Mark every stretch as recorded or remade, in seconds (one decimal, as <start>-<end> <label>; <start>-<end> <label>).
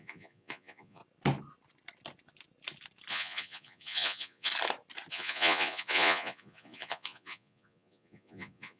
0.0-1.0 remade; 1.0-3.1 recorded; 3.1-4.5 remade; 4.5-5.1 recorded; 5.1-8.8 remade